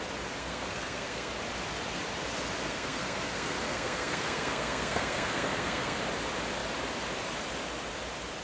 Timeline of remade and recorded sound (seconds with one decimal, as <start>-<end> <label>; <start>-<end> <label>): 0.0-0.4 recorded; 0.4-1.3 remade; 1.3-2.6 recorded; 2.6-6.0 remade; 6.0-8.4 recorded